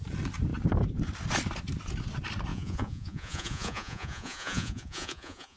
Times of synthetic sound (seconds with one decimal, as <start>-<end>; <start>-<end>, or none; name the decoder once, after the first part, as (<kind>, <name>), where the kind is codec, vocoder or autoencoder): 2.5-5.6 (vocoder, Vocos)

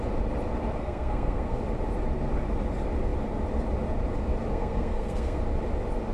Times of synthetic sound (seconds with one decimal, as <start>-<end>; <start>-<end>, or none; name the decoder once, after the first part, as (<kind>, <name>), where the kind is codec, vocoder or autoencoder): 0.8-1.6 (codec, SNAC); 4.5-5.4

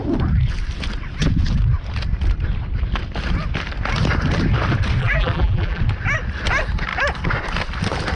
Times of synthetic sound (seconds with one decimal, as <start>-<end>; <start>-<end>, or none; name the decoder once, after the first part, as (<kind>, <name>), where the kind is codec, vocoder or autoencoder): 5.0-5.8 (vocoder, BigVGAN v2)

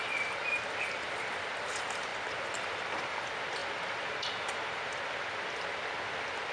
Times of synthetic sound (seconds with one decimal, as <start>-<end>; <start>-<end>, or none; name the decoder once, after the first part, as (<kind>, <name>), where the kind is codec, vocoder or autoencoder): none

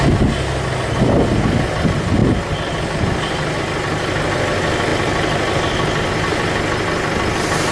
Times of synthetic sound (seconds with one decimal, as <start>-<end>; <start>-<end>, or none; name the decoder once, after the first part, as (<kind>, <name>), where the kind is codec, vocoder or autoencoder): none